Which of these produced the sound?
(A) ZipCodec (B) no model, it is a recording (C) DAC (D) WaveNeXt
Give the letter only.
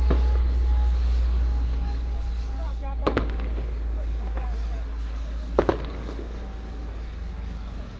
C